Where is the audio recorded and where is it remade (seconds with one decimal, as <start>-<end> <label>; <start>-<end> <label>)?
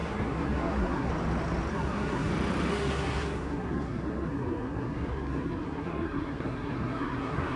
0.0-1.1 remade; 1.1-1.7 recorded; 1.7-2.3 remade; 2.3-2.7 recorded; 2.7-7.6 remade